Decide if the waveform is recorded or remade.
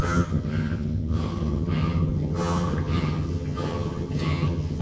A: remade